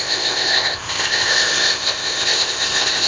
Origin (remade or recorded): remade